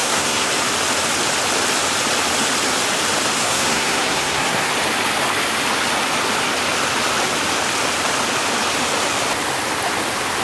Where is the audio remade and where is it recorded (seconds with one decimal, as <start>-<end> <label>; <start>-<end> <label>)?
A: 0.0-0.5 remade; 0.5-3.4 recorded; 3.4-4.7 remade; 4.7-10.4 recorded